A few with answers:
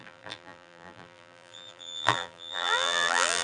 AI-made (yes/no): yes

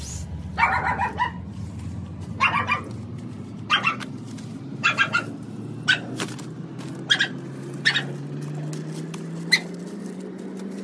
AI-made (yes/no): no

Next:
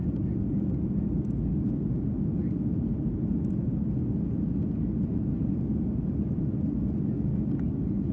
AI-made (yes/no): no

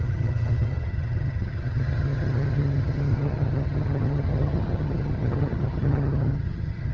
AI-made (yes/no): yes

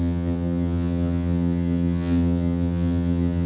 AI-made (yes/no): yes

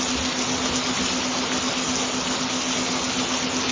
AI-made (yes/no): no